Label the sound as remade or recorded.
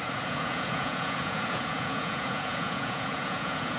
remade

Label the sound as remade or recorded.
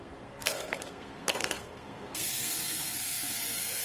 remade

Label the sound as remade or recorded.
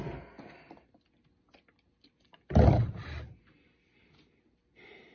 recorded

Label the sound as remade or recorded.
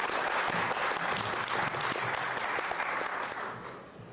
recorded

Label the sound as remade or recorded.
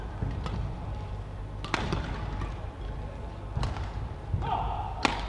recorded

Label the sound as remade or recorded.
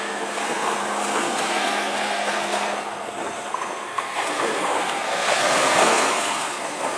remade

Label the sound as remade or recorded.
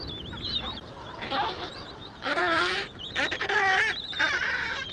remade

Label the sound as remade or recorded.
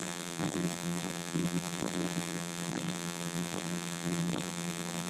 remade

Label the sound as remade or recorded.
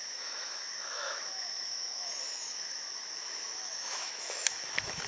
remade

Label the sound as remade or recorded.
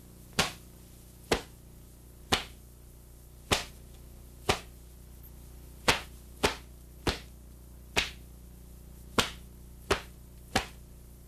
recorded